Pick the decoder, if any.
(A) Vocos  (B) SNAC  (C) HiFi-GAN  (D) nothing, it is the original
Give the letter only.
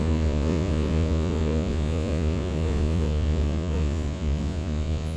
A